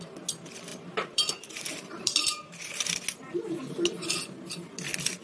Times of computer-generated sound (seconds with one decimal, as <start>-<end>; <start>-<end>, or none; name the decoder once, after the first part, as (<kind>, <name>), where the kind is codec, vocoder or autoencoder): 0.7-2.7 (vocoder, BigVGAN v2)